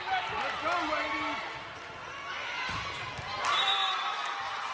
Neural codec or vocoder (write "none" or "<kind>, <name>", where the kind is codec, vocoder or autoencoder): none